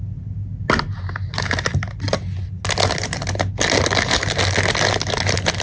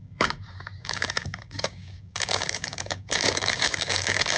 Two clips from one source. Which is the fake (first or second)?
second